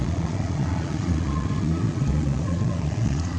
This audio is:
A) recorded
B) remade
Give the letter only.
B